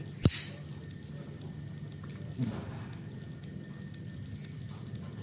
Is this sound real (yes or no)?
yes